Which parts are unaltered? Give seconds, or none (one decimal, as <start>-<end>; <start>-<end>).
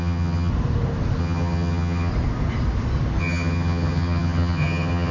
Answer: 0.5-1.2; 2.1-3.2